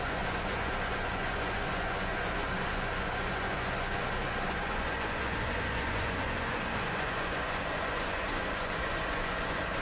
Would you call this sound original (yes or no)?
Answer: no